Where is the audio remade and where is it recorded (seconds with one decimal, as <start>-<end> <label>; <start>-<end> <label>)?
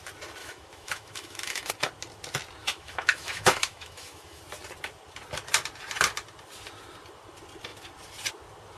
0.0-0.4 recorded; 0.4-1.7 remade; 1.7-2.6 recorded; 2.6-4.4 remade; 4.4-8.8 recorded